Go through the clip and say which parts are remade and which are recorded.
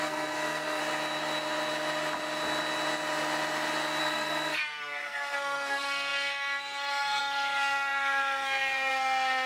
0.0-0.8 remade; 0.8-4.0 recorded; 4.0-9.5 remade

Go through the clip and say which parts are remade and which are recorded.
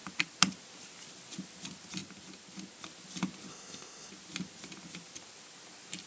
0.0-3.5 recorded; 3.5-4.1 remade; 4.1-6.1 recorded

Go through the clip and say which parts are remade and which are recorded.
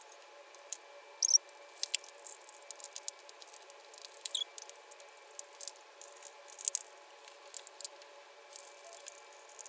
0.0-9.7 recorded